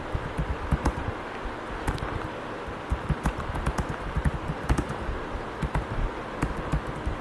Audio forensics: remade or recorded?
recorded